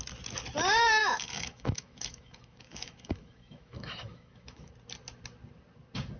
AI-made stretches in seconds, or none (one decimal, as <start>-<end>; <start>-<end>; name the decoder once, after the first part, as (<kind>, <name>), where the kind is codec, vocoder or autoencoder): 1.0-4.7 (autoencoder, DAC-VAE)